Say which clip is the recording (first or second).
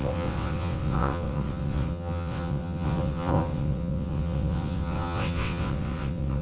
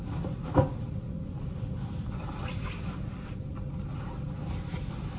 second